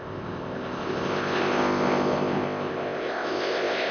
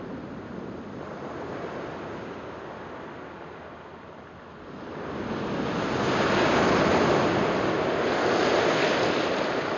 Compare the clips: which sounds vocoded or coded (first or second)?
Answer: first